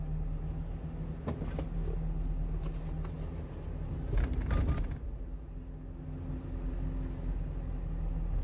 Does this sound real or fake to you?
real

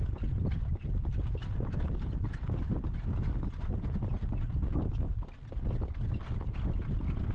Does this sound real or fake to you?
real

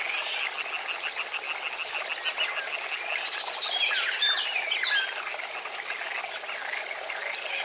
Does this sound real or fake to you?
real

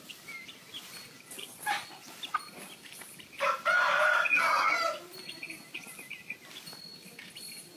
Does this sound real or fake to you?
real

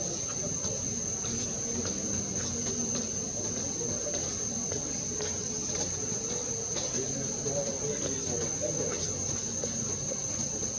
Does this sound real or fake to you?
real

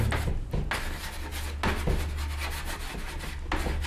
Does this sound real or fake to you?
real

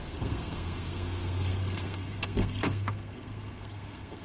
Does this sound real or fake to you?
fake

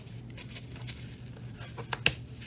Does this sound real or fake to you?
real